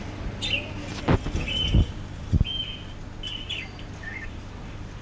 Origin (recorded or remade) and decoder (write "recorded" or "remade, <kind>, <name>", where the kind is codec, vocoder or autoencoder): recorded